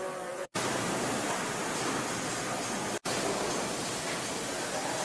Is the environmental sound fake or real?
real